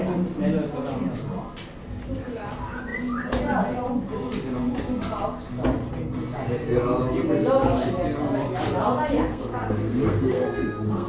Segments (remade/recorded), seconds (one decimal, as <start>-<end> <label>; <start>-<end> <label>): 0.0-9.3 recorded; 9.3-11.1 remade